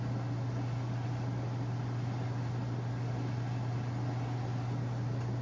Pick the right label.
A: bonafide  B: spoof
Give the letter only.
A